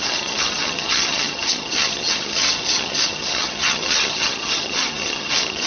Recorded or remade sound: remade